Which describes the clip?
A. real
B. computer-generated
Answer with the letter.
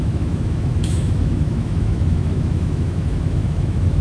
B